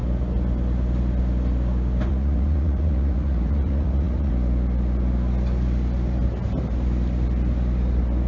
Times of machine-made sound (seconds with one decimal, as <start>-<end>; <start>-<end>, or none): 2.1-4.3